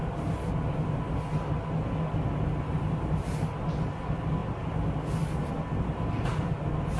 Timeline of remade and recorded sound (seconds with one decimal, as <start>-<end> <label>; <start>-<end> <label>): 0.0-7.0 recorded